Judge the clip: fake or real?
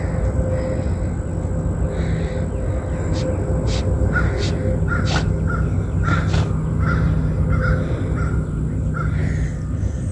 real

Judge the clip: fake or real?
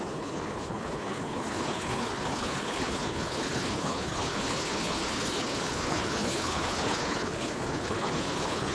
fake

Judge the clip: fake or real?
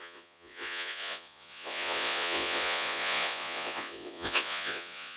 fake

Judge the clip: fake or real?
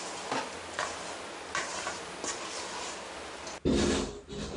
real